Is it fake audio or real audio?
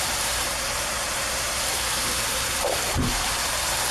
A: fake